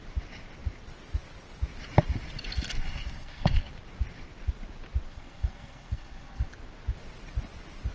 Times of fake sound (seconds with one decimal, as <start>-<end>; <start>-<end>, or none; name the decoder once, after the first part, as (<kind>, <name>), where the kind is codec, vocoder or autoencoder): 2.8-3.7 (codec, SNAC); 5.1-6.5